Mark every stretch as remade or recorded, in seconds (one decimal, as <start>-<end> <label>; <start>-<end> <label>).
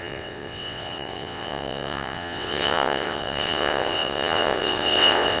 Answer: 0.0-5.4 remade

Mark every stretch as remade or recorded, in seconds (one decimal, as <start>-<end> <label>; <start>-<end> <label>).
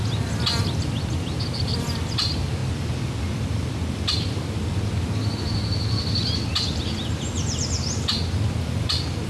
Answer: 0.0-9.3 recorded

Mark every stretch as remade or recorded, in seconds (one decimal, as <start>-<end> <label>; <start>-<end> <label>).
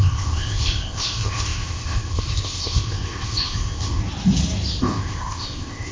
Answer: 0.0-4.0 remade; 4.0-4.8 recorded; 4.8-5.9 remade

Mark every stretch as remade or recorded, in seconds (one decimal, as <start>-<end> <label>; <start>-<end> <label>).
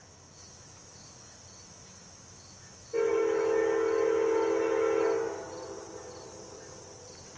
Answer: 0.0-3.6 remade; 3.6-7.4 recorded